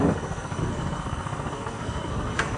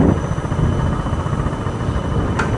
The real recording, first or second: second